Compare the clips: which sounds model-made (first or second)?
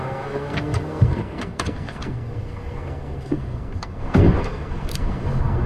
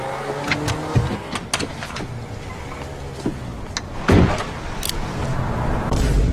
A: first